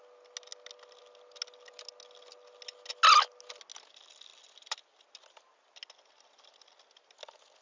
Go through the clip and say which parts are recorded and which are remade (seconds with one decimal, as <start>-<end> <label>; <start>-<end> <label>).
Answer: 0.0-7.6 recorded